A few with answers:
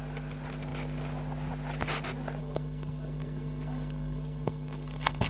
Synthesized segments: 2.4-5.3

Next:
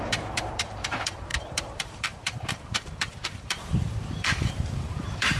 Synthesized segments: 0.0-5.4

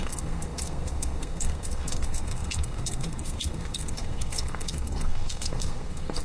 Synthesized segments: 0.0-6.2

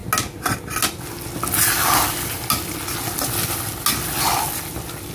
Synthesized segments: none

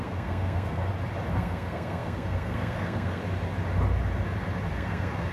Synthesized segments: 0.0-0.8; 1.3-3.2; 4.7-5.3

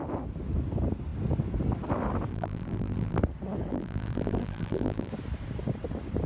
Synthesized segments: 2.3-3.2; 3.7-5.1

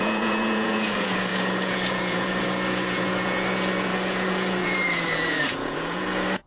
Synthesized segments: 0.0-6.5

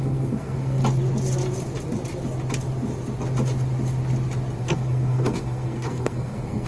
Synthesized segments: 0.0-0.8; 4.6-6.7